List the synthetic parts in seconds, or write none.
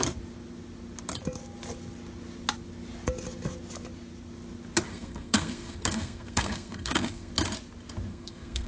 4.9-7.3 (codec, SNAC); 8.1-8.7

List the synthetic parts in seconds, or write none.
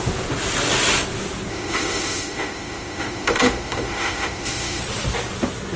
1.5-4.8 (autoencoder, DAC-VAE)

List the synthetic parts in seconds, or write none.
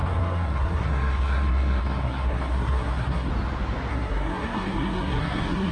0.0-3.3 (codec, SNAC); 3.9-5.7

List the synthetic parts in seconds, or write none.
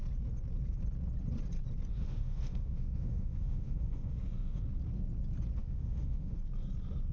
1.9-4.6 (autoencoder, DAC-VAE); 5.6-6.4